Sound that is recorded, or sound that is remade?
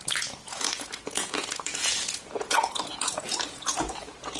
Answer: remade